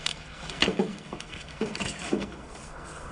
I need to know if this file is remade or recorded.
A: remade